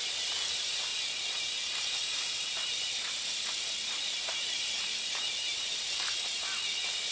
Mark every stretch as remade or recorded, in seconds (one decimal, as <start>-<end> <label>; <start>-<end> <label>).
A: 0.0-0.9 remade; 0.9-1.9 recorded; 1.9-7.1 remade